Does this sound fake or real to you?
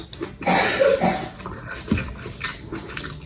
real